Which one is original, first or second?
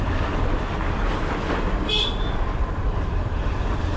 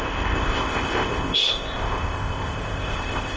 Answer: first